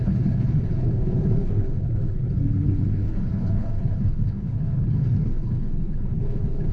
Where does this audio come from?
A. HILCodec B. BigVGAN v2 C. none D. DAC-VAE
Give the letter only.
A